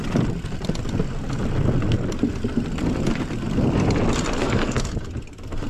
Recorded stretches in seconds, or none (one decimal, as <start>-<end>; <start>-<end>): 0.0-4.4; 4.9-5.7